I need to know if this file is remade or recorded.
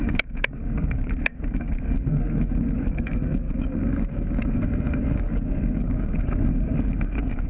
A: remade